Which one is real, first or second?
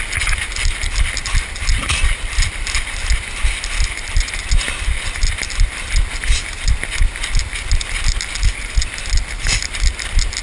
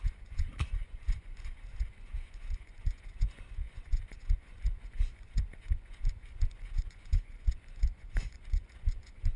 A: first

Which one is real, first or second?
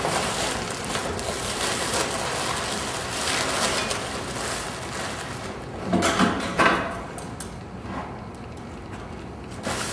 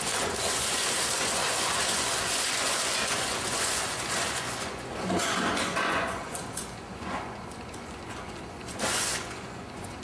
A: first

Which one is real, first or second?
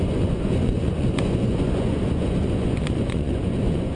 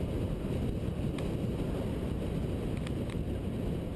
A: second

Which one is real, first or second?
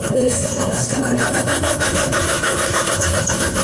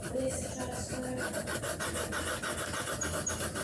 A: second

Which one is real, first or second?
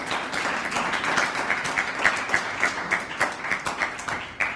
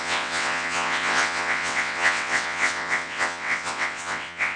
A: first